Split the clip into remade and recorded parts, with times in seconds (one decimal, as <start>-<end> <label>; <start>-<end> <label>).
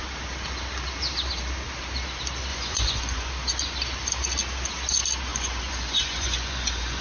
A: 0.0-2.5 recorded; 2.5-3.3 remade; 3.3-5.3 recorded; 5.3-7.0 remade